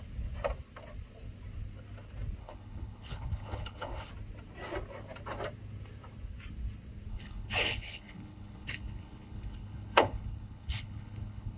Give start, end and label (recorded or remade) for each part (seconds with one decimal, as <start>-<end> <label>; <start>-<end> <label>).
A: 0.0-2.4 recorded; 2.4-4.1 remade; 4.1-7.1 recorded; 7.1-11.6 remade